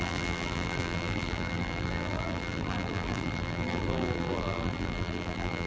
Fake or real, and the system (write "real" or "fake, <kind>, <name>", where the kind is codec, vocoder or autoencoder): fake, vocoder, BigVGAN v2